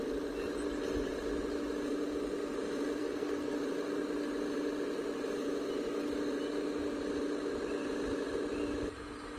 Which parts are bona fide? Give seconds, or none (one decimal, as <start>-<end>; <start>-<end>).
0.0-3.0; 3.6-9.4